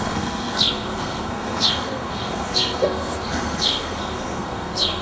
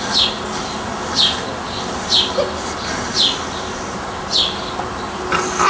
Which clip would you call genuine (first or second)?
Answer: second